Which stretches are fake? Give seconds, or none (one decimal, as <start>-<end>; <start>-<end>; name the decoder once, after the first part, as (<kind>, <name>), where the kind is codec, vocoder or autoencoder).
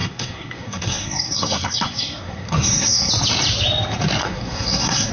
0.0-3.1 (codec, SNAC); 4.2-5.1